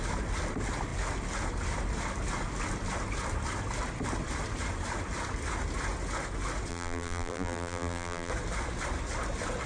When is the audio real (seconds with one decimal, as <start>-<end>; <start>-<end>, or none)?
0.0-6.7; 8.3-9.7